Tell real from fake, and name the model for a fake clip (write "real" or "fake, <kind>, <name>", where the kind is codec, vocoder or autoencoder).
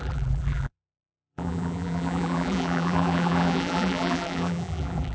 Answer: fake, vocoder, BigVGAN v2